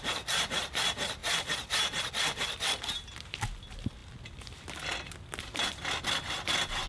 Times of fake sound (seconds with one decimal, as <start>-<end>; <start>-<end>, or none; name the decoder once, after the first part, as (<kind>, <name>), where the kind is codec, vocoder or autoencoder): none